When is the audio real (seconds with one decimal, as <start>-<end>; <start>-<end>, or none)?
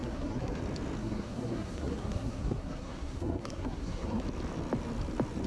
0.6-1.0; 4.2-5.5